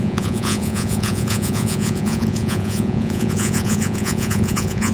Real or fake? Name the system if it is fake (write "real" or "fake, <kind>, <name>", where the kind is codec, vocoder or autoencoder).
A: fake, vocoder, Vocos